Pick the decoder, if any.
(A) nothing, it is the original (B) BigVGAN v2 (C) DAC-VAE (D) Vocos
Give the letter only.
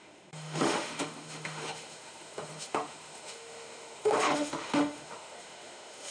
C